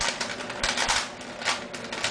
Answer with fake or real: real